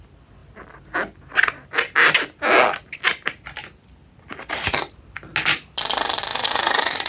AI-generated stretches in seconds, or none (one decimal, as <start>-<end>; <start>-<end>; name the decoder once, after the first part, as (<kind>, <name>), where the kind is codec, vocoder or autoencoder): 6.3-7.1 (vocoder, Vocos)